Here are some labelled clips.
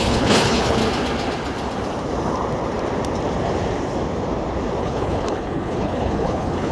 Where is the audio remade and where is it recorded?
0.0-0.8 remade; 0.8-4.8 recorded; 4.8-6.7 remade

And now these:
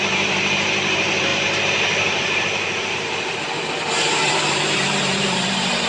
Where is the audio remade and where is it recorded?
0.0-5.9 remade

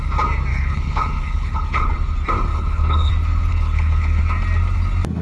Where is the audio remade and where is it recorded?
0.0-0.5 recorded; 0.5-1.9 remade; 1.9-2.5 recorded; 2.5-3.1 remade; 3.1-3.5 recorded; 3.5-4.2 remade; 4.2-5.2 recorded

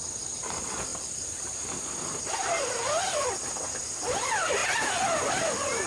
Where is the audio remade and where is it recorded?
0.0-5.9 recorded

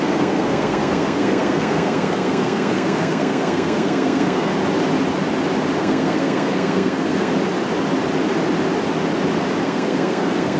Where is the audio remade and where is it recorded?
0.0-4.5 remade; 4.5-5.8 recorded; 5.8-7.3 remade; 7.3-9.6 recorded; 9.6-10.6 remade